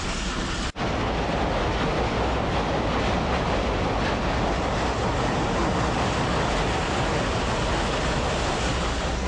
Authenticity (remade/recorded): recorded